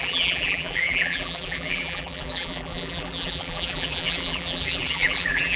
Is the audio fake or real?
fake